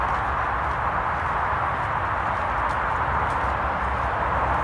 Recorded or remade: recorded